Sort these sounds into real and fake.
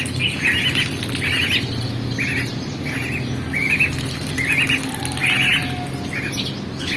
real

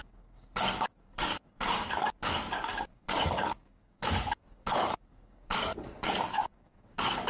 fake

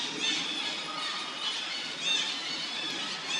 real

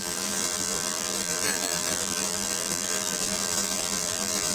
fake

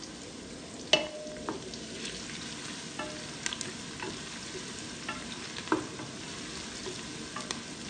real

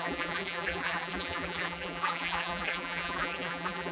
fake